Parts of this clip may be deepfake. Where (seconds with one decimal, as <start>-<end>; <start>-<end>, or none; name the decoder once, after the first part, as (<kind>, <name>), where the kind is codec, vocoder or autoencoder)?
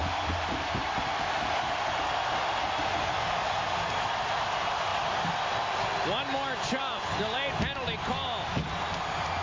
none